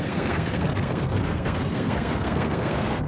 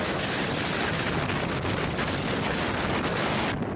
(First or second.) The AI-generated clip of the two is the first